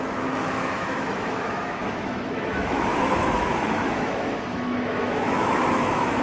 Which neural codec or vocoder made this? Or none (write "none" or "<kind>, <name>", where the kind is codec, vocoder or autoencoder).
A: autoencoder, DAC-VAE